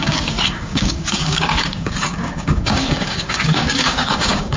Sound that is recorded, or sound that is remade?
remade